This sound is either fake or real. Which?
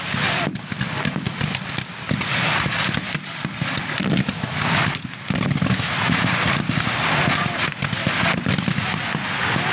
real